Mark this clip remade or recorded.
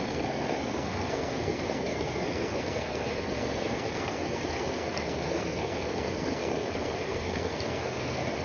remade